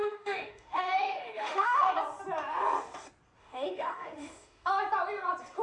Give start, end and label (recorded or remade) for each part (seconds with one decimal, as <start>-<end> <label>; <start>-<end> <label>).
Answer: 0.0-1.9 remade; 1.9-3.4 recorded; 3.4-4.7 remade; 4.7-5.6 recorded